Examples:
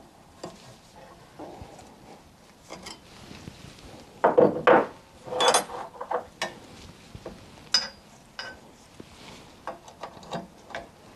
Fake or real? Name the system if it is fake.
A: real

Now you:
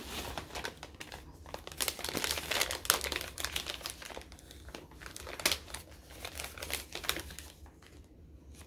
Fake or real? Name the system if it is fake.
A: real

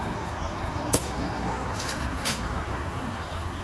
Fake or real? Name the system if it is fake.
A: fake, codec, SNAC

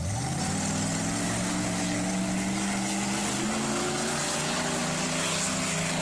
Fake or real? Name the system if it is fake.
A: real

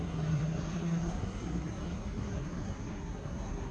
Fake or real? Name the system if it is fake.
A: fake, codec, SNAC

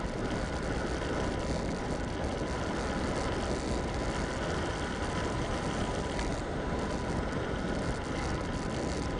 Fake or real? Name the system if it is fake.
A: real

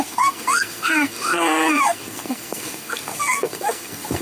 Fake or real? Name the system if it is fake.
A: fake, codec, SNAC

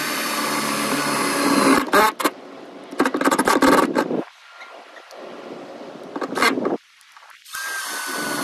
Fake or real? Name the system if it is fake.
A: real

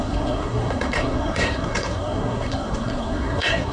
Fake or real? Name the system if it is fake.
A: fake, codec, SNAC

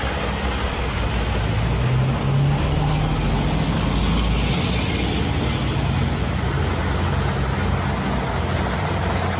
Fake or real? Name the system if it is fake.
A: real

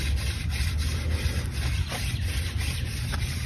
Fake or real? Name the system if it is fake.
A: real